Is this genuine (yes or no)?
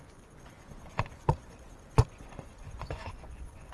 no